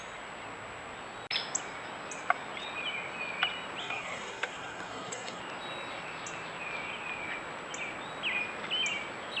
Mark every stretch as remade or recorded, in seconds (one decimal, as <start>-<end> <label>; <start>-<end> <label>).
0.0-3.8 recorded; 3.8-5.4 remade; 5.4-9.4 recorded